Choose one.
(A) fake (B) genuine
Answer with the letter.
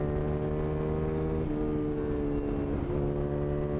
B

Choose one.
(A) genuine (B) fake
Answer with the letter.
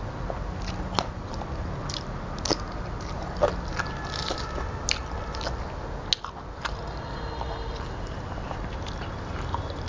A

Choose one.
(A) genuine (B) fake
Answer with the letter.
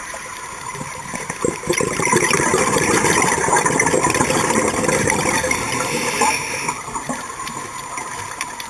B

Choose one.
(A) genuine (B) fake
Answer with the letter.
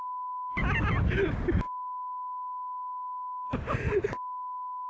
A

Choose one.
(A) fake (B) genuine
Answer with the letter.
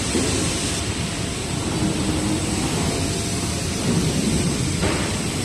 A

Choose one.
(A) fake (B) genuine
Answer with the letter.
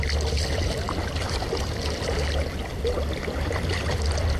B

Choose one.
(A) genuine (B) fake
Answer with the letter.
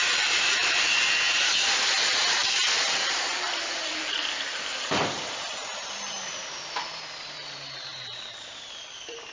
B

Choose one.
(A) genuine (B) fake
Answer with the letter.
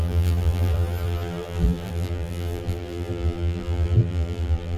B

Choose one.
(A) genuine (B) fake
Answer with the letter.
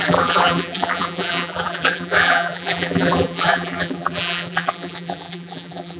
B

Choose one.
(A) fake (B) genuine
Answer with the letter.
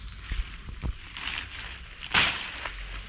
B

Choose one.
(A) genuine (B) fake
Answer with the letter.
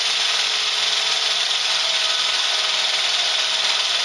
A